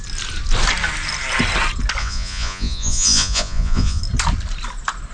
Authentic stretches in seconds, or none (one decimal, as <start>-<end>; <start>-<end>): 0.0-2.0; 4.0-5.1